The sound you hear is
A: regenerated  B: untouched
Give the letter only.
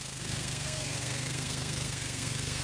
A